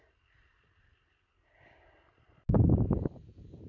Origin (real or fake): real